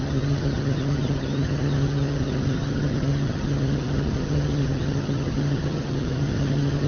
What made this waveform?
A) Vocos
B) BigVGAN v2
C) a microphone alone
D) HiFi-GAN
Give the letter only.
D